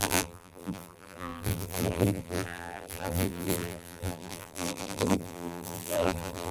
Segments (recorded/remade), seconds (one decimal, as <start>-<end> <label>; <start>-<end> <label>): 0.0-6.5 remade